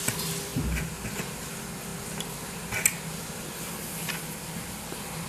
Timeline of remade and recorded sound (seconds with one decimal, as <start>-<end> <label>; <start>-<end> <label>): 0.0-0.5 recorded; 0.5-1.2 remade; 1.2-5.3 recorded